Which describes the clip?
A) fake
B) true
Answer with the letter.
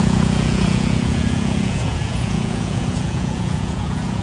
A